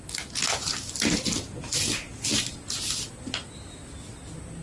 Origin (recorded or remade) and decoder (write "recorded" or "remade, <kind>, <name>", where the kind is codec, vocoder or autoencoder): recorded